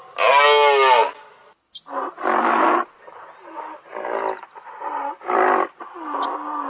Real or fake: real